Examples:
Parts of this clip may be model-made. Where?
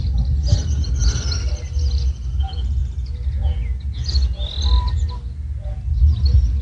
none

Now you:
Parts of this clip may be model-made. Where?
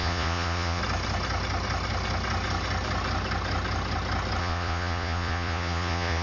0.0-0.8; 4.4-6.2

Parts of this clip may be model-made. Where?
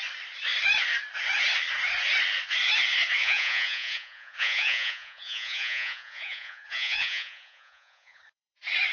3.2-8.2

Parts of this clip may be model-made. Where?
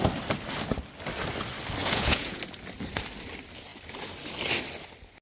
1.8-2.4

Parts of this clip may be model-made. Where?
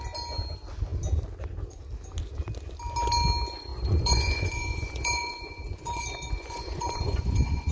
3.7-7.7